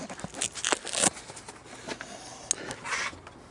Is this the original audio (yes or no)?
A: yes